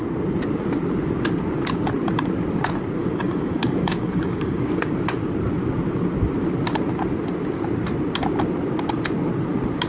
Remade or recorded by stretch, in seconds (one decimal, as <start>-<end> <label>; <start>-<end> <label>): 0.0-3.0 recorded; 3.0-4.6 remade; 4.6-9.9 recorded